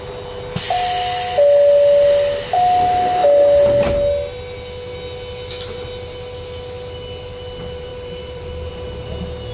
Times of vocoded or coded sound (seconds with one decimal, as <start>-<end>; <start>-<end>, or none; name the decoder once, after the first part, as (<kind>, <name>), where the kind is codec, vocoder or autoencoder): 7.9-8.7 (vocoder, BigVGAN v2)